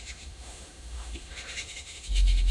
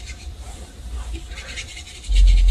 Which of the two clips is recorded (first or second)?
second